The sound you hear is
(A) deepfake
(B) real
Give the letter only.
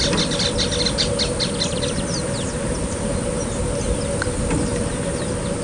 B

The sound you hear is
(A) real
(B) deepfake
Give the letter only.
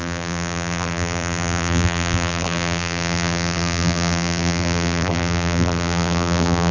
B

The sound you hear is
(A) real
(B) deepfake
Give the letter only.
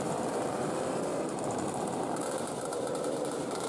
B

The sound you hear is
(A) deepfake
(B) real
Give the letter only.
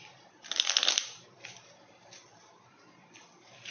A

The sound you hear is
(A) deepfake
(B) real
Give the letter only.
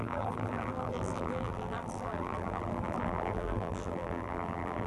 A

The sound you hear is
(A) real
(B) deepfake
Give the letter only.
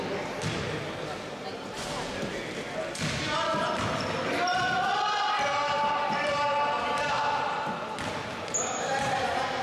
A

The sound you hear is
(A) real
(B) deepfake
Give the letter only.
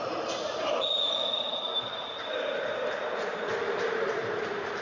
B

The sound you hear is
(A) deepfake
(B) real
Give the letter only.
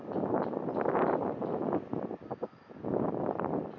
B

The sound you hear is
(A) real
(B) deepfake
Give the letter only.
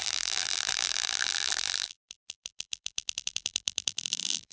B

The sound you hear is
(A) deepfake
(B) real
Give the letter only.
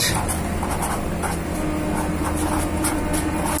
B